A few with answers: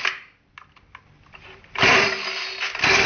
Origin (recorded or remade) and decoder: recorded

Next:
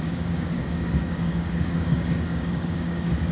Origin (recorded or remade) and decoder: remade, codec, DAC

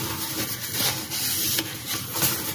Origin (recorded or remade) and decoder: recorded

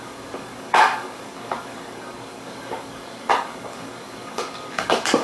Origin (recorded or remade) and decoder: remade, codec, DAC